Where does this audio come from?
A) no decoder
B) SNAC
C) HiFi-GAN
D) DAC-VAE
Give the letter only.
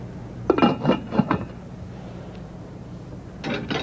A